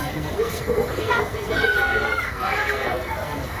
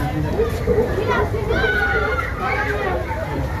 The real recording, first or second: second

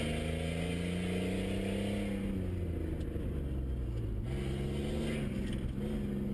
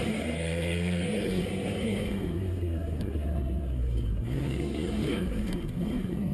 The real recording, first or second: first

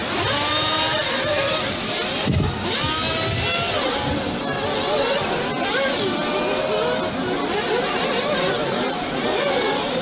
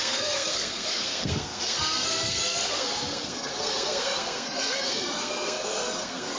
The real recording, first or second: first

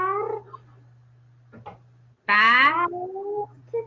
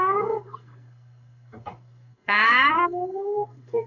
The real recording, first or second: first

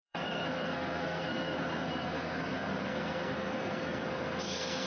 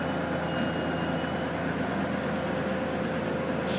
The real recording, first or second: second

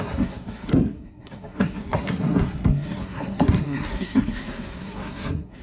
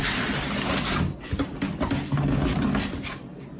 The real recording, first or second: second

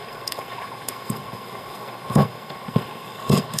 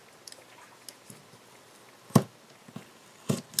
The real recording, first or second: second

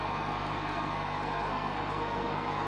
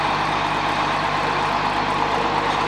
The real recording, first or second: second